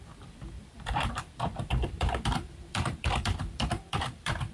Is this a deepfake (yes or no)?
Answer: yes